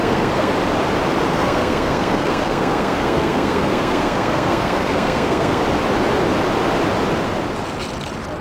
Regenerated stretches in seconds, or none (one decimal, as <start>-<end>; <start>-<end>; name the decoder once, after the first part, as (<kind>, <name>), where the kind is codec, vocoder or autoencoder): 0.0-0.5 (codec, SNAC); 1.3-5.6

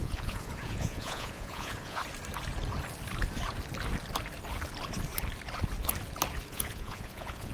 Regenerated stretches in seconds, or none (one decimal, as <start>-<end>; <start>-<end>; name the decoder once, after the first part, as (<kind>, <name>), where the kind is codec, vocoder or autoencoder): 0.0-2.0 (vocoder, Vocos); 6.5-7.5

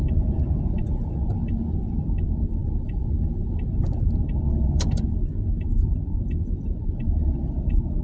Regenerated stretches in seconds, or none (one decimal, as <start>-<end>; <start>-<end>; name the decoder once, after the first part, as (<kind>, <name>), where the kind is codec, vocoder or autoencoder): 0.0-8.0 (vocoder, BigVGAN v2)